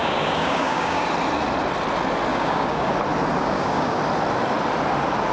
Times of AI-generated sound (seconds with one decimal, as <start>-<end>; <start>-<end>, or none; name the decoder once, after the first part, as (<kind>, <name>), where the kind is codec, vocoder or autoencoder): 0.0-1.1 (codec, DAC); 2.3-2.9; 3.4-4.0